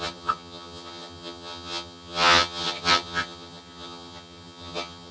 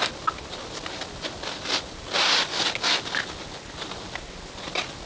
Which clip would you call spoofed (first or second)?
first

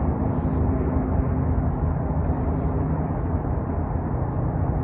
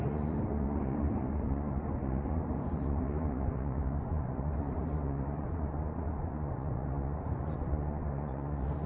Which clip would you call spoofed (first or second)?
second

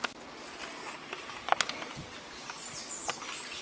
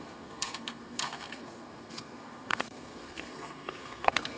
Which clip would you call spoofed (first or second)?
second